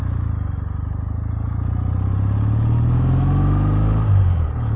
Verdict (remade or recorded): recorded